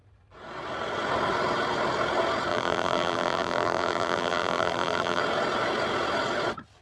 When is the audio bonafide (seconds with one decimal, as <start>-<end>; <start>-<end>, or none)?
0.0-2.5; 5.2-6.8